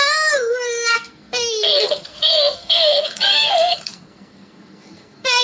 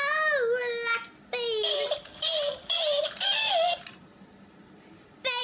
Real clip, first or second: second